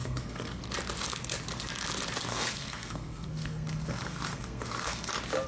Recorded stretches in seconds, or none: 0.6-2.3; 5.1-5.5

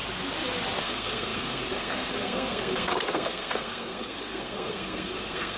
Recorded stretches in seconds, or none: 0.0-0.8

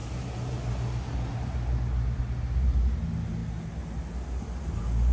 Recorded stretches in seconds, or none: 0.0-5.1

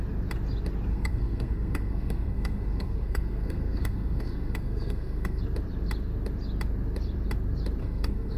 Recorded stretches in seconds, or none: 0.0-0.9; 5.4-7.8

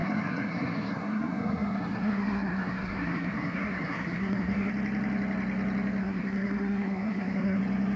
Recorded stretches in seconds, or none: 4.7-6.0; 7.6-8.0